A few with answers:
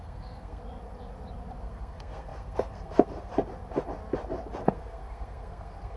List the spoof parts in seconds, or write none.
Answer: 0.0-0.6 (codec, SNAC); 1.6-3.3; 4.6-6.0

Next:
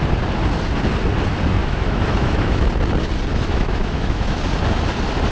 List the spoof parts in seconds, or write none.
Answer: 1.6-2.7 (autoencoder, DAC-VAE); 3.3-4.4